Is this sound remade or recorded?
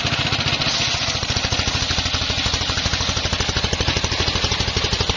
recorded